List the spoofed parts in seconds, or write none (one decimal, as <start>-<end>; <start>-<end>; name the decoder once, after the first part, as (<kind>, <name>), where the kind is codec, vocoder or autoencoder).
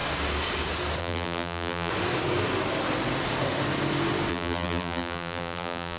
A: 1.0-1.9 (vocoder, BigVGAN v2); 4.3-6.0